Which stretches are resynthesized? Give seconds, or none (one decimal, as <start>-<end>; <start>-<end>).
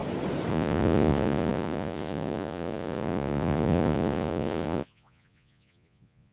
0.5-6.3